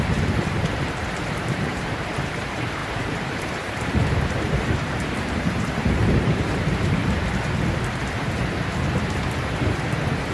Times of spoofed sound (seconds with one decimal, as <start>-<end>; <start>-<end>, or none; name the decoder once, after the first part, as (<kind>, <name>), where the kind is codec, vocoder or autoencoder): 0.0-7.0 (vocoder, BigVGAN v2); 7.6-10.3